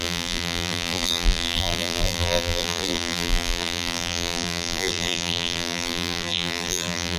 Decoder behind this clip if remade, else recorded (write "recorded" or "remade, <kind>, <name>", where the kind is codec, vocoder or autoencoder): remade, vocoder, BigVGAN v2